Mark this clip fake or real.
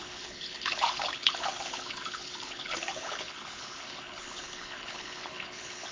fake